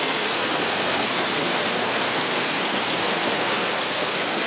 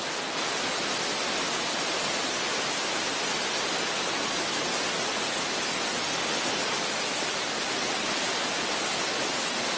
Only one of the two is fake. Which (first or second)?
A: first